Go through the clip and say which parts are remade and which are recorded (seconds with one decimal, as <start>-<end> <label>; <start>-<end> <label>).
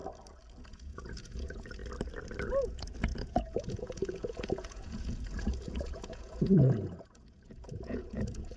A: 0.0-0.6 recorded; 0.6-1.8 remade; 1.8-2.6 recorded; 2.6-8.6 remade